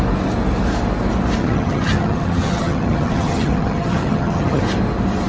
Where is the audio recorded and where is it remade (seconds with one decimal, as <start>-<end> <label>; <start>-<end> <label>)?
0.0-1.4 recorded; 1.4-4.6 remade; 4.6-5.3 recorded